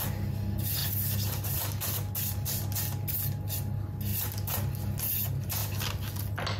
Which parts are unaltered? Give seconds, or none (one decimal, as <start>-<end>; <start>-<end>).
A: 0.0-6.6